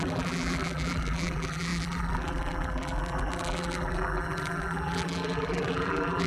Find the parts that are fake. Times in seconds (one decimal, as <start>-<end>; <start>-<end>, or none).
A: 0.0-6.3